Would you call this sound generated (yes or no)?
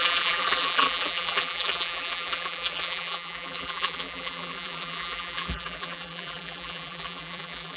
yes